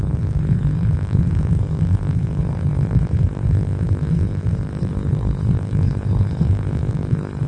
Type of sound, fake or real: fake